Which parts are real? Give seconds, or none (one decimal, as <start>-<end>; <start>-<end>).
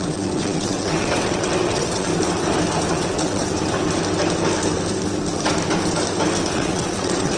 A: 2.1-2.9; 3.5-6.5